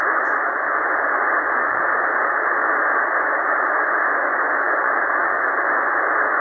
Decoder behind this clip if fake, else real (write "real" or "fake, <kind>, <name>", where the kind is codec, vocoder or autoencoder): fake, vocoder, Vocos